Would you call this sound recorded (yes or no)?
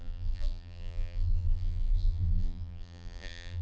no